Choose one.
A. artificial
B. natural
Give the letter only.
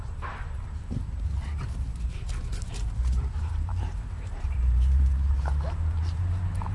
A